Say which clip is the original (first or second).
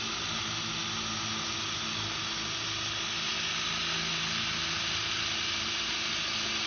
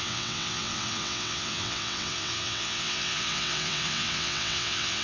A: first